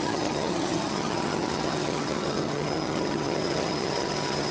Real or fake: fake